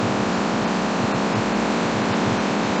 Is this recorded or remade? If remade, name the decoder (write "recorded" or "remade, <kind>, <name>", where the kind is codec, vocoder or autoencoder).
recorded